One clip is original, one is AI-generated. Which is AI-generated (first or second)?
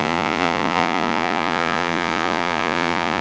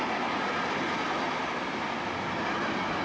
first